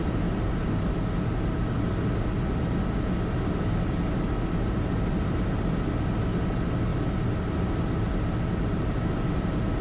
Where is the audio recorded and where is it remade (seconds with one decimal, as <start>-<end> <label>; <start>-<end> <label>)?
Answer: 0.0-9.8 recorded